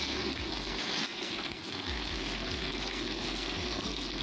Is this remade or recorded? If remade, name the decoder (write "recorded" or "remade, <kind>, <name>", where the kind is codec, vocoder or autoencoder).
remade, codec, SNAC